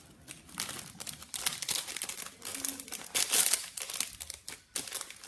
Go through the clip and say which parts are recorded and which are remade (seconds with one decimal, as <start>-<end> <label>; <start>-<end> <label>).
0.0-5.3 recorded